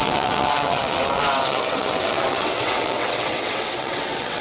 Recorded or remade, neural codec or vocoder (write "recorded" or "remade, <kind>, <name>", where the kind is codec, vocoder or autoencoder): remade, vocoder, WaveNeXt